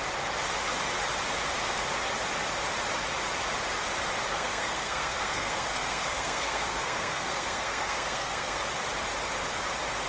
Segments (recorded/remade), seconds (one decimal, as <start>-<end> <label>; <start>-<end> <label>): 0.0-4.3 recorded; 4.3-8.6 remade; 8.6-10.1 recorded